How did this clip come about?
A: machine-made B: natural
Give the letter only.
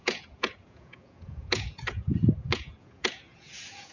A